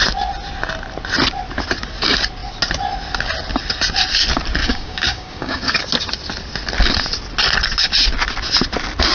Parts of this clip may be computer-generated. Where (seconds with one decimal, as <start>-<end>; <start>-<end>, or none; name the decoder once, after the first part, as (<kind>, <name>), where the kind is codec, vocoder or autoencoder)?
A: 4.6-5.8 (codec, DAC)